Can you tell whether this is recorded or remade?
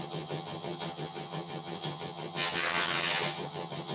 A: remade